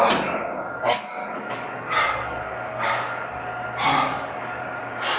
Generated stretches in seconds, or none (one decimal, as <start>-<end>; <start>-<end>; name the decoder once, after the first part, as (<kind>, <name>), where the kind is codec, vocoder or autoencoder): 1.2-3.3 (codec, DAC); 3.9-4.6